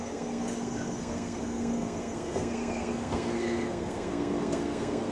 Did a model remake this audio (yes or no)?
yes